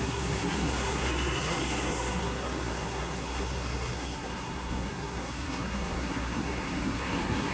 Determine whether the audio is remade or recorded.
remade